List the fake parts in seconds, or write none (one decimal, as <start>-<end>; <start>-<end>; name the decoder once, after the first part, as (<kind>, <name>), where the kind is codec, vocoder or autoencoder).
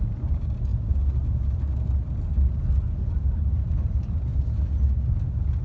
none